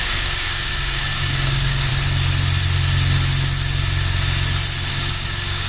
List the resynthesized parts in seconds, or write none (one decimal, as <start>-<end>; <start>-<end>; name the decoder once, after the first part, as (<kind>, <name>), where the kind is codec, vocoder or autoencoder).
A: 0.0-1.9 (codec, DAC); 4.9-5.7